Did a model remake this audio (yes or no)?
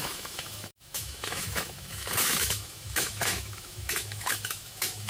yes